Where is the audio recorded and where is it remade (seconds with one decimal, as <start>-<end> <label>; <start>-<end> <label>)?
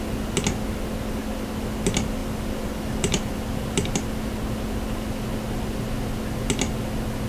0.0-2.2 recorded; 2.2-3.3 remade; 3.3-7.3 recorded